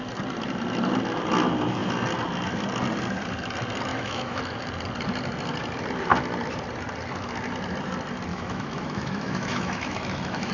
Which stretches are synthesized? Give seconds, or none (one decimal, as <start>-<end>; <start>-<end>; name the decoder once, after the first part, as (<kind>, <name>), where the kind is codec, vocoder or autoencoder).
3.9-4.4 (autoencoder, DAC-VAE); 8.3-10.5